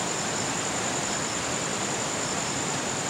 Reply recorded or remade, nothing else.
recorded